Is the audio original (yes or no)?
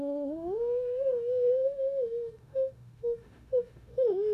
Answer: no